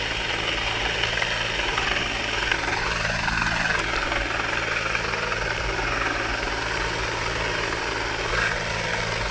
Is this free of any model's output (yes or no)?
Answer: yes